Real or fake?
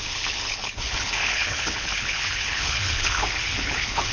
fake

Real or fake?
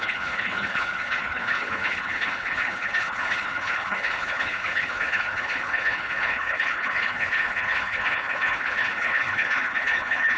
fake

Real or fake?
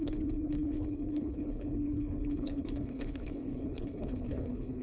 fake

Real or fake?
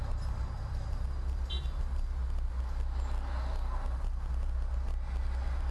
real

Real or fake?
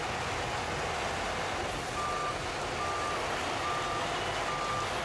real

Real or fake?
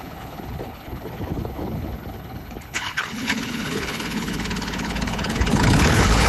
fake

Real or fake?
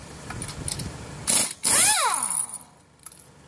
real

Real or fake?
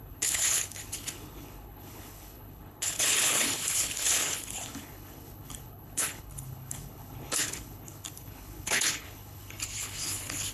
fake